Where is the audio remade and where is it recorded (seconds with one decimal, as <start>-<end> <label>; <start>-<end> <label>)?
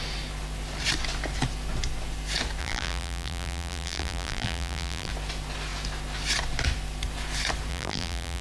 0.0-2.6 recorded; 2.6-5.1 remade; 5.1-7.7 recorded; 7.7-8.4 remade